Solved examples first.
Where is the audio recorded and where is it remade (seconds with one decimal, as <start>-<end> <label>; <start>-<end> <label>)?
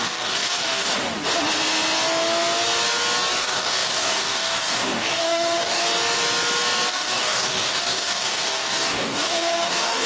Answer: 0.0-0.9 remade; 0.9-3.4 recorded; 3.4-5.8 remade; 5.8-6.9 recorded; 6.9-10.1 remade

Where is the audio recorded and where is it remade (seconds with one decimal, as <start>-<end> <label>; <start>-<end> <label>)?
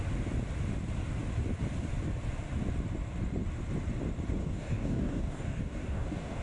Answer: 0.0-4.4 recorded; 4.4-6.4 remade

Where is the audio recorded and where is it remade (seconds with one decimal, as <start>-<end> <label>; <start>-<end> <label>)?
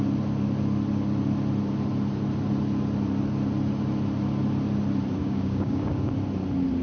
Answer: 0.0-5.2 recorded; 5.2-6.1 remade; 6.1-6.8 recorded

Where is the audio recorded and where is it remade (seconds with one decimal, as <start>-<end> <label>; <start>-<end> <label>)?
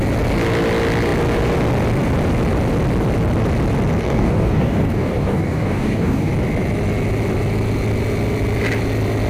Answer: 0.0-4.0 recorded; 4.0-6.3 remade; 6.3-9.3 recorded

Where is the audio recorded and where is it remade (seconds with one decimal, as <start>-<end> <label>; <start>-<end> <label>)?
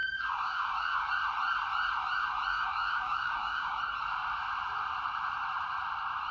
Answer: 0.0-1.1 remade; 1.1-2.5 recorded; 2.5-3.8 remade; 3.8-6.3 recorded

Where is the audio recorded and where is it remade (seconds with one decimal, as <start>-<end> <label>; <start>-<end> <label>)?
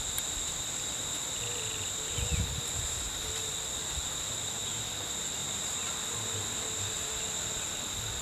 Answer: 0.0-8.2 recorded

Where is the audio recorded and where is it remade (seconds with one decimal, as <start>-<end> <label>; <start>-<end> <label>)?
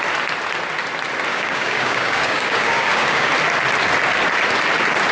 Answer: 0.0-1.3 recorded; 1.3-3.3 remade; 3.3-5.1 recorded